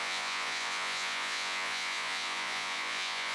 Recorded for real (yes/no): no